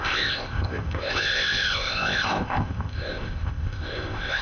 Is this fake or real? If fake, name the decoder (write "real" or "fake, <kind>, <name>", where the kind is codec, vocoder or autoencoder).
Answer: fake, codec, ZipCodec